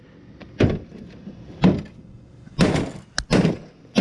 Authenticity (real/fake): real